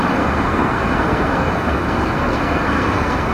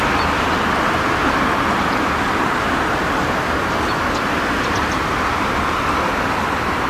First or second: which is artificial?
first